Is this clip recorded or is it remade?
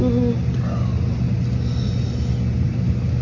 recorded